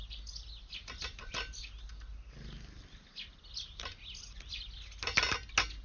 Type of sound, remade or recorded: recorded